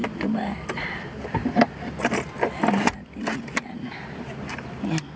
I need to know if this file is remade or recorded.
recorded